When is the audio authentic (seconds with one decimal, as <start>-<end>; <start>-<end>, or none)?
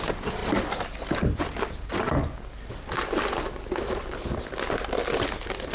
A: 0.4-2.7; 4.3-5.1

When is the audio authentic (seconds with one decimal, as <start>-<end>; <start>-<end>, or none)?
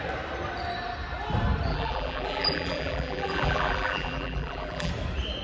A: 0.0-1.7; 4.9-5.4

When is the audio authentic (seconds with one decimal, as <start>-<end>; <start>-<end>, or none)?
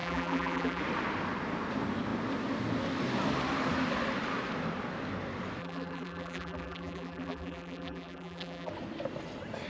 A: 0.8-5.6; 8.7-9.7